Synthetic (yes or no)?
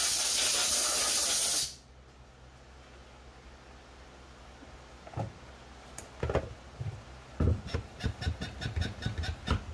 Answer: no